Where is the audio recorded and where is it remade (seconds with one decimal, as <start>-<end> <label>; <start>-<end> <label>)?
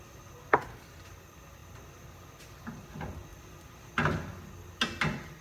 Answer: 0.0-5.4 recorded